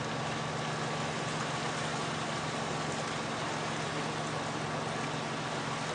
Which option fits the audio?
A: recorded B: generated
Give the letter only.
A